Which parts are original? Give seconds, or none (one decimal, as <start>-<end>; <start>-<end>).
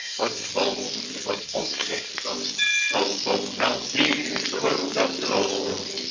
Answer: 0.5-1.4; 2.1-6.1